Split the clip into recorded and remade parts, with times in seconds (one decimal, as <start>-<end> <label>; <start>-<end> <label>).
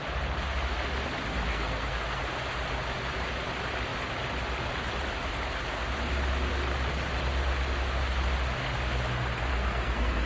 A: 0.0-1.5 recorded; 1.5-2.2 remade; 2.2-9.5 recorded; 9.5-10.3 remade